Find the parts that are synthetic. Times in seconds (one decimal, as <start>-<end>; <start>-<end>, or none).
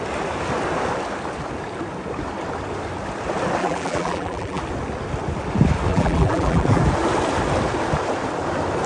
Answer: 3.6-4.6; 5.9-6.8